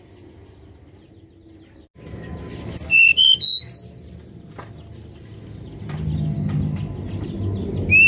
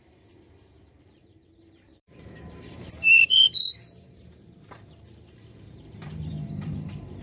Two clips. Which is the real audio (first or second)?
first